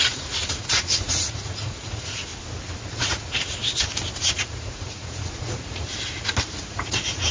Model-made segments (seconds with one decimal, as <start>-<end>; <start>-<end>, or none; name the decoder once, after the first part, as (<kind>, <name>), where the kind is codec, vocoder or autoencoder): 0.0-2.3 (vocoder, Vocos); 3.0-3.6; 4.2-5.9; 6.6-7.3